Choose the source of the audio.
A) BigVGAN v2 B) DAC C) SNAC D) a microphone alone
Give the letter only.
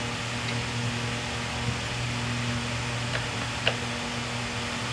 D